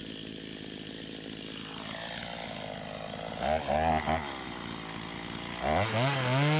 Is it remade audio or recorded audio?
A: recorded